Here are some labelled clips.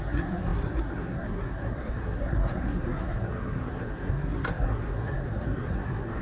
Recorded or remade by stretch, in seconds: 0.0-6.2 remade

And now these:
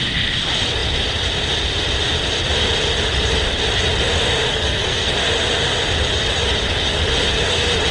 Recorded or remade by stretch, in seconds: 0.0-4.5 recorded; 4.5-5.1 remade; 5.1-7.9 recorded

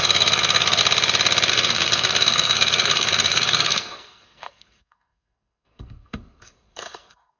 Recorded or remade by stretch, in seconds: 0.0-0.8 remade; 0.8-1.5 recorded; 1.5-7.4 remade

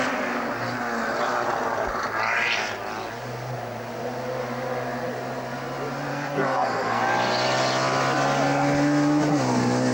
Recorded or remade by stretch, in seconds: 0.0-6.1 recorded; 6.1-7.0 remade; 7.0-9.9 recorded

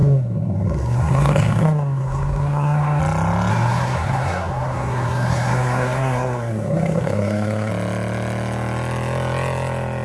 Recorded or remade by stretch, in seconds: 0.0-3.0 remade; 3.0-3.5 recorded; 3.5-7.7 remade; 7.7-10.0 recorded

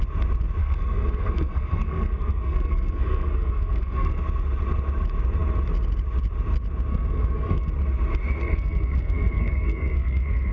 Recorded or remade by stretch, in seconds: 0.0-0.6 recorded; 0.6-4.2 remade; 4.2-6.9 recorded; 6.9-7.7 remade; 7.7-8.4 recorded; 8.4-10.5 remade

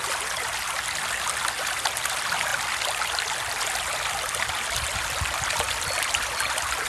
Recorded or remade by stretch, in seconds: 0.0-6.9 recorded

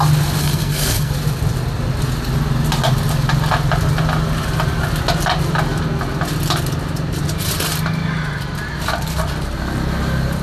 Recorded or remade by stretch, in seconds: 0.0-0.4 recorded; 0.4-1.1 remade; 1.1-10.4 recorded